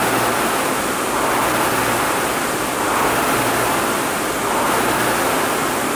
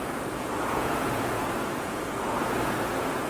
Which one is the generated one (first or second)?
second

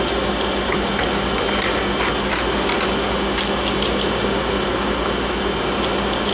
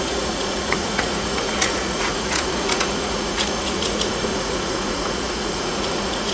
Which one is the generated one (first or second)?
second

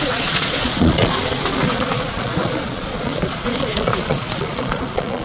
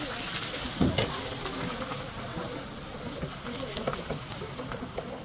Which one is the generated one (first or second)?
first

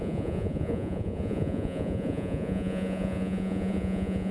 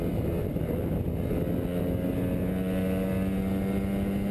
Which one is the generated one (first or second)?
first